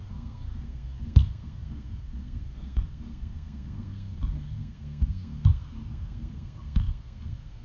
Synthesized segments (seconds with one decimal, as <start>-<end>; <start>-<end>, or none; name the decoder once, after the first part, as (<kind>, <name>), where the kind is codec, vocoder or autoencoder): 0.0-7.6 (codec, SNAC)